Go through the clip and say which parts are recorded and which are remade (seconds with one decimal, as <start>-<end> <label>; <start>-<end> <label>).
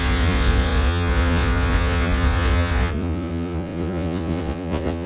0.0-5.1 remade